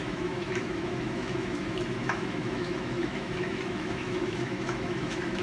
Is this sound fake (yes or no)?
yes